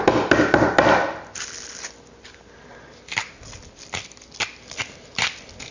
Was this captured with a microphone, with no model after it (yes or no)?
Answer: yes